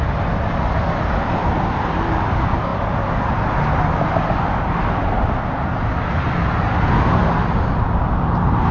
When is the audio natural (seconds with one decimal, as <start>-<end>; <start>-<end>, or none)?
0.0-8.7